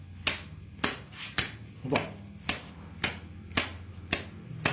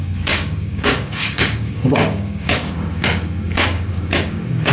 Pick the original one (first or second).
first